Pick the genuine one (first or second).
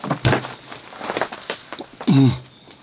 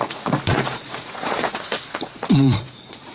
first